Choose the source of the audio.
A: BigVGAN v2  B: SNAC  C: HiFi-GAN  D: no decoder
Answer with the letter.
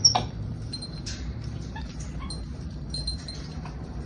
A